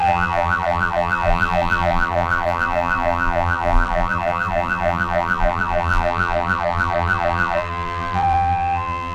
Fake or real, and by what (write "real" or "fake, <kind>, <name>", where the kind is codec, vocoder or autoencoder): fake, vocoder, BigVGAN v2